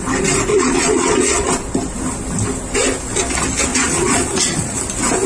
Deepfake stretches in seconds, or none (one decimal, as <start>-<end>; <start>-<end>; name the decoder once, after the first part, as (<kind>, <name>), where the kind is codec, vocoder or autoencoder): 0.5-1.5 (vocoder, Vocos); 3.7-4.8